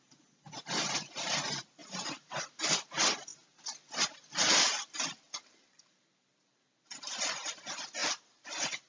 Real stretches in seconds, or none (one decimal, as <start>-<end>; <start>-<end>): 0.0-1.8; 2.7-8.0